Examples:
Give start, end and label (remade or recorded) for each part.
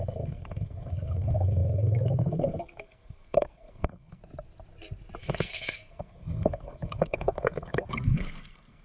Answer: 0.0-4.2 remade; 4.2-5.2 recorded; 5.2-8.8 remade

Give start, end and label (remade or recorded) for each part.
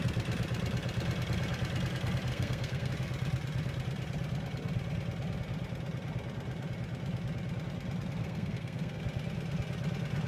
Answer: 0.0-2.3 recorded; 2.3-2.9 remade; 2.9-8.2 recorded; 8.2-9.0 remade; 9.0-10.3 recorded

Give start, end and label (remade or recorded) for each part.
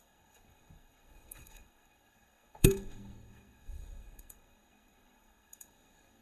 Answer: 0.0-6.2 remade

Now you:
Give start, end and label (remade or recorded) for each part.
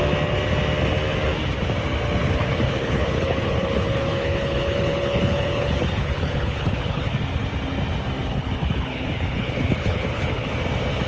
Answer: 0.0-2.2 recorded; 2.2-7.1 remade; 7.1-8.3 recorded; 8.3-10.5 remade; 10.5-11.1 recorded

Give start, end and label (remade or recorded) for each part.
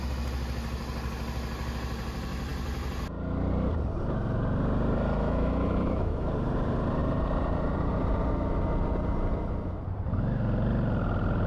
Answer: 0.0-5.2 recorded; 5.2-6.3 remade; 6.3-11.5 recorded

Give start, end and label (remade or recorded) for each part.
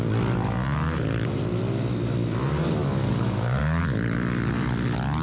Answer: 0.0-2.8 recorded; 2.8-3.8 remade; 3.8-5.2 recorded